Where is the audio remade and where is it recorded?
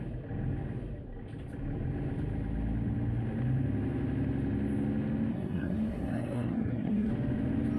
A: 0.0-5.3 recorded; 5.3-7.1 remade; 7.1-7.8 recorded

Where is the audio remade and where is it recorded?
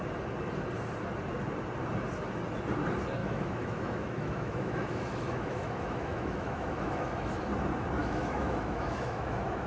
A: 0.0-3.2 recorded; 3.2-7.4 remade; 7.4-8.0 recorded; 8.0-9.7 remade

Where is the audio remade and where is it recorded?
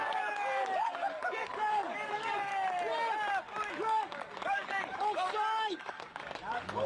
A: 0.0-2.5 remade; 2.5-3.7 recorded; 3.7-6.9 remade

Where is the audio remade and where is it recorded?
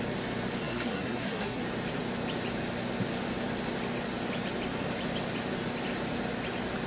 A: 0.0-0.6 recorded; 0.6-1.6 remade; 1.6-6.9 recorded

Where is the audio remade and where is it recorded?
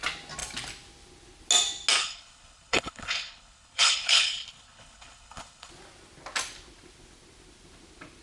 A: 0.0-2.0 recorded; 2.0-5.7 remade; 5.7-8.2 recorded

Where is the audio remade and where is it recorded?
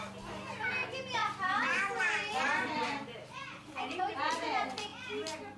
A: 0.0-1.2 recorded; 1.2-4.0 remade; 4.0-5.6 recorded